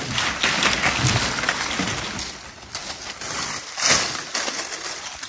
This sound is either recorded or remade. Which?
recorded